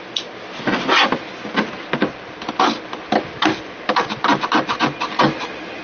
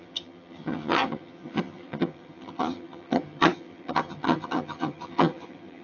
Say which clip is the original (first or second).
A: first